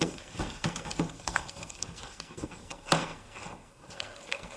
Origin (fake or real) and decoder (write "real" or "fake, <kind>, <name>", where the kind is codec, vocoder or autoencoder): fake, codec, SNAC